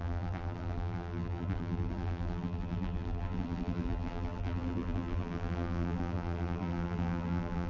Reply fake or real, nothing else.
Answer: fake